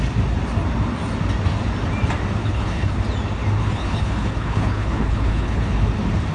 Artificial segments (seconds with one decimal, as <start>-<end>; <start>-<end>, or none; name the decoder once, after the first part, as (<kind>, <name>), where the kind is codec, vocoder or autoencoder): 2.4-3.0 (codec, HILCodec); 3.6-5.8